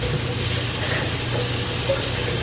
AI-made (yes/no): no